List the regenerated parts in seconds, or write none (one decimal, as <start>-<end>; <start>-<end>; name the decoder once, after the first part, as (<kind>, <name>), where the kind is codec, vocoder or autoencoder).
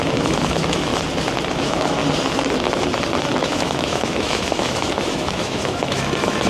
0.0-0.9 (autoencoder, DAC-VAE); 1.5-2.0; 3.4-6.5